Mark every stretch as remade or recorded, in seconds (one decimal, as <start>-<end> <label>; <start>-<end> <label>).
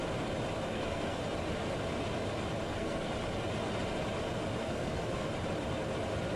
0.0-0.7 recorded; 0.7-1.2 remade; 1.2-2.6 recorded; 2.6-3.1 remade; 3.1-4.6 recorded; 4.6-5.3 remade; 5.3-6.4 recorded